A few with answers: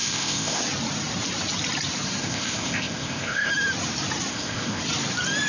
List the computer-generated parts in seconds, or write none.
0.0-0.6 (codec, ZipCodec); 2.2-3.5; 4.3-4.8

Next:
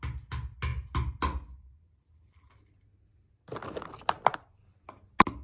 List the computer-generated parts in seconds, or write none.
none

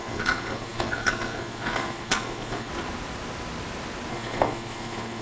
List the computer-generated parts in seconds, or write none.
0.0-2.7 (codec, SNAC); 4.1-5.2

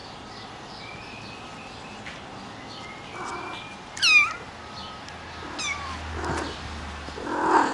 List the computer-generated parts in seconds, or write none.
none

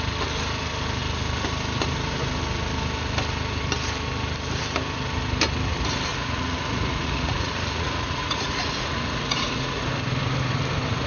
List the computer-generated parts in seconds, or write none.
6.1-9.8 (vocoder, Vocos)

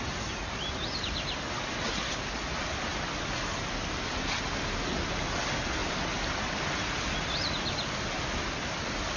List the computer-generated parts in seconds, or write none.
none

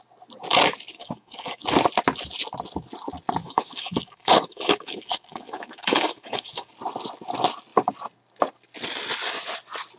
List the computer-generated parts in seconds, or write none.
0.9-1.6 (codec, DAC); 3.4-6.7

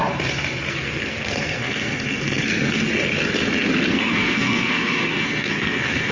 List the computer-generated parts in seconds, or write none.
0.7-2.9 (codec, SNAC); 3.9-6.1